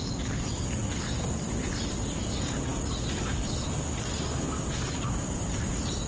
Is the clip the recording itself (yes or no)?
yes